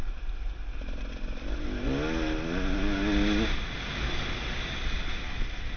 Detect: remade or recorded recorded